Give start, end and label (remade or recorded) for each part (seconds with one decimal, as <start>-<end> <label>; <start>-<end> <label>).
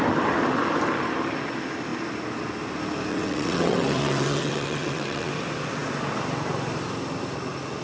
0.0-3.1 recorded; 3.1-5.3 remade; 5.3-7.8 recorded